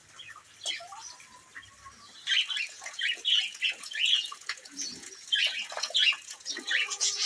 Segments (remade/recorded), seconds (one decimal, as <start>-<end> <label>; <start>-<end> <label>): 0.0-2.7 recorded; 2.7-7.3 remade